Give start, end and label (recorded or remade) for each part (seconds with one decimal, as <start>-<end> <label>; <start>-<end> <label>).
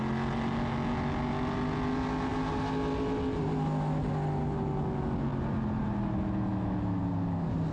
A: 0.0-6.5 recorded; 6.5-7.0 remade; 7.0-7.7 recorded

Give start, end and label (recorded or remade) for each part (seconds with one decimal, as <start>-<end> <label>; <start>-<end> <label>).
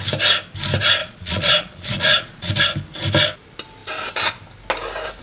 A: 0.0-1.0 recorded; 1.0-2.5 remade; 2.5-5.2 recorded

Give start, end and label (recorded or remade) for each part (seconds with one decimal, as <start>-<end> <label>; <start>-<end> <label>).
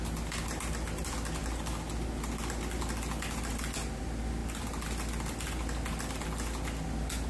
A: 0.0-7.3 recorded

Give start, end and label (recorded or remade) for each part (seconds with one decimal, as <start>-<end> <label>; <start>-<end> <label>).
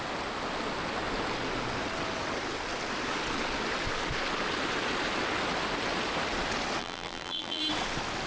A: 0.0-6.8 recorded; 6.8-7.6 remade; 7.6-8.3 recorded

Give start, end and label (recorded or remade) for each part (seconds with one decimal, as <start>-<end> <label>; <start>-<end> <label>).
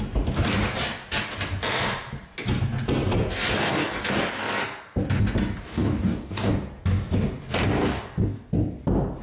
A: 0.0-3.6 recorded; 3.6-4.2 remade; 4.2-5.7 recorded; 5.7-6.5 remade; 6.5-7.8 recorded; 7.8-8.5 remade; 8.5-9.2 recorded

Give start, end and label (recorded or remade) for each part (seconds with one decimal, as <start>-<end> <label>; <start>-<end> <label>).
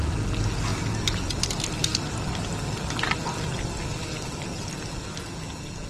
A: 0.0-5.9 recorded